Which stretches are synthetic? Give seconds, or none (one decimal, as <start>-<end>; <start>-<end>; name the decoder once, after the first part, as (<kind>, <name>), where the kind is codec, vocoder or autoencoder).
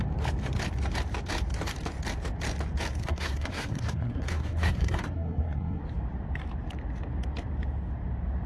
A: 3.0-5.8 (codec, SNAC)